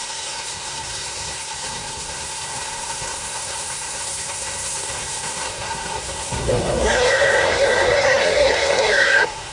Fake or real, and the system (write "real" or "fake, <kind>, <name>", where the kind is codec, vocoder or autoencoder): fake, codec, SNAC